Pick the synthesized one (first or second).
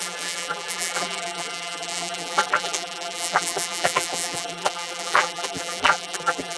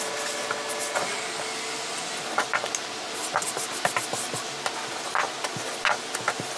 first